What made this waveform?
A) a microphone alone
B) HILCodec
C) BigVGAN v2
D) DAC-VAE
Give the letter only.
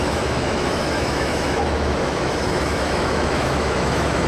D